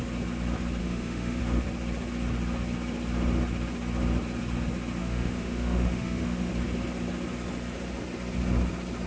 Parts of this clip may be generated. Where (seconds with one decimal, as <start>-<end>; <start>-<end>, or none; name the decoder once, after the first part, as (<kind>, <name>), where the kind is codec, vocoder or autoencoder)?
0.8-1.4 (autoencoder, DAC-VAE); 5.0-6.5